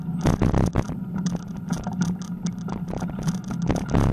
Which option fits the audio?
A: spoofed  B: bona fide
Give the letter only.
B